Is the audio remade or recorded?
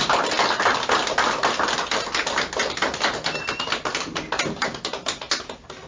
recorded